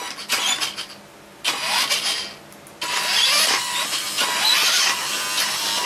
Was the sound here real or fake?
real